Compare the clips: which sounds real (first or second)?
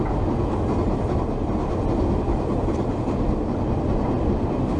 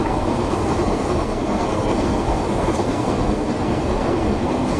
first